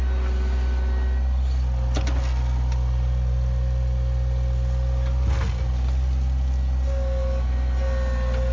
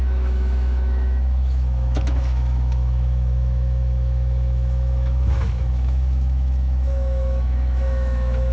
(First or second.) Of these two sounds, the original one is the first